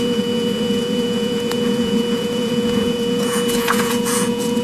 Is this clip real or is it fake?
fake